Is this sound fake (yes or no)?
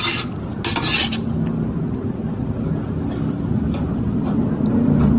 no